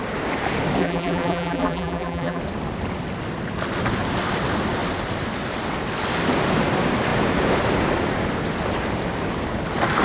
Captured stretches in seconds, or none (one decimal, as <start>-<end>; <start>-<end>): 0.0-0.8; 2.4-10.0